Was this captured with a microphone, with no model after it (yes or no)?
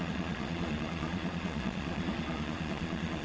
no